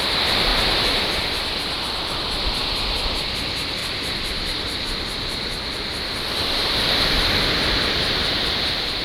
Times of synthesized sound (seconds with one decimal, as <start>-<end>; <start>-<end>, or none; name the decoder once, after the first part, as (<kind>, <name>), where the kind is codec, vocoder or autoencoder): 0.5-1.2 (vocoder, BigVGAN v2); 3.8-4.8